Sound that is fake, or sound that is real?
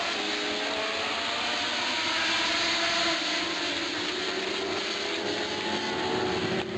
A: real